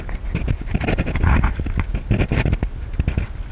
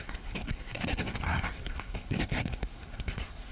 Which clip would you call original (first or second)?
first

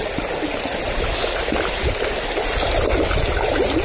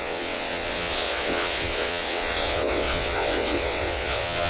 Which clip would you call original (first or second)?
first